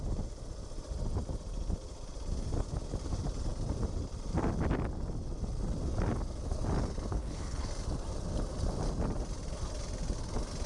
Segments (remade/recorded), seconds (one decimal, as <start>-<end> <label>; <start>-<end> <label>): 0.0-7.2 recorded; 7.2-7.7 remade; 7.7-10.7 recorded

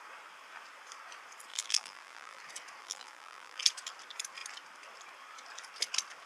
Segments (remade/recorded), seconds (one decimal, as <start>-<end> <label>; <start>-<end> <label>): 0.0-1.5 recorded; 1.5-2.4 remade; 2.4-2.8 recorded; 2.8-3.6 remade; 3.6-6.3 recorded

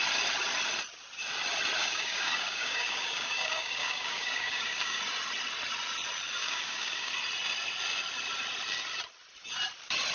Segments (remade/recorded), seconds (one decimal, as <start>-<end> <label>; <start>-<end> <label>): 0.0-1.8 recorded; 1.8-5.0 remade; 5.0-6.4 recorded; 6.4-7.1 remade; 7.1-10.1 recorded

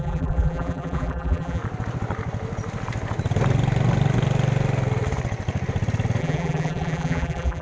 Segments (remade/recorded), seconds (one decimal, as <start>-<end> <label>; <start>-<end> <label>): 0.0-1.6 remade; 1.6-6.2 recorded; 6.2-7.6 remade

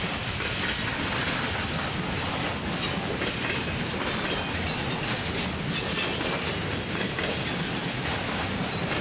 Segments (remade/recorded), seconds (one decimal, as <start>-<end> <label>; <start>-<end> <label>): 0.0-9.0 recorded

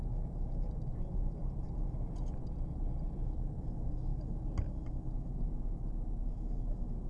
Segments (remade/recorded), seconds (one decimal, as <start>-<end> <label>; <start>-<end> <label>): 0.0-7.1 recorded